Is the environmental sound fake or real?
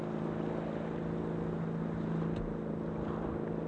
real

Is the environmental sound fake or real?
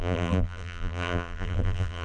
fake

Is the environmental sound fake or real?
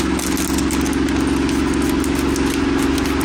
real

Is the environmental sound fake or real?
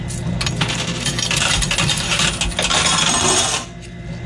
real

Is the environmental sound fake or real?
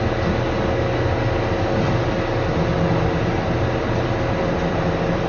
real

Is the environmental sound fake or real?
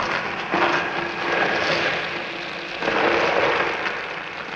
real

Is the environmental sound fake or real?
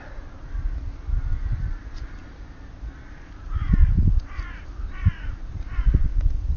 real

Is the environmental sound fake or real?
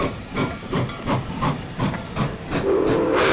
fake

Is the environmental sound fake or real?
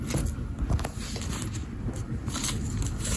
real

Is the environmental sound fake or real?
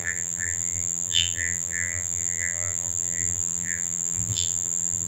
fake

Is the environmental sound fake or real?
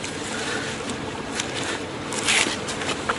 fake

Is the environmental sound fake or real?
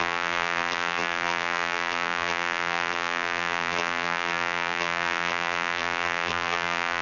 fake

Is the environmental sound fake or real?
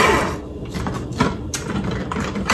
fake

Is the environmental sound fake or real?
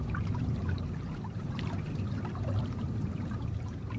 fake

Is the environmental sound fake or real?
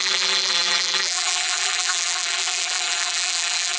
fake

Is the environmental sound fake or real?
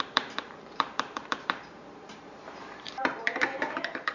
fake